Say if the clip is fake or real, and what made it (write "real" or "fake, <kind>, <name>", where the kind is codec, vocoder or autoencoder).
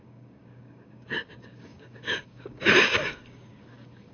fake, codec, DAC